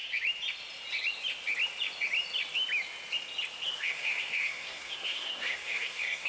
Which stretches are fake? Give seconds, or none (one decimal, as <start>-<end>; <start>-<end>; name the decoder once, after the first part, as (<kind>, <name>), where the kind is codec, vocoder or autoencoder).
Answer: 3.8-6.3 (codec, SNAC)